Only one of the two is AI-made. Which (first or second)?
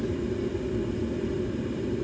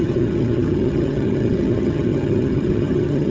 second